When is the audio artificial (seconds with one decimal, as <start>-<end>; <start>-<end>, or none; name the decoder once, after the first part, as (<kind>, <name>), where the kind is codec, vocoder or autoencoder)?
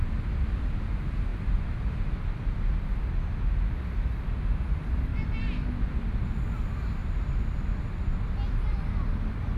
7.0-7.7 (vocoder, BigVGAN v2)